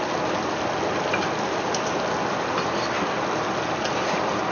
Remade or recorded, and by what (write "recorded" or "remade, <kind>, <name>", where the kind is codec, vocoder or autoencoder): recorded